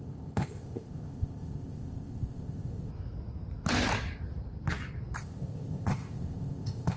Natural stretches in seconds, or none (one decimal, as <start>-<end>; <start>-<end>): 2.9-5.2